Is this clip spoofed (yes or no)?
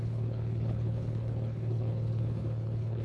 yes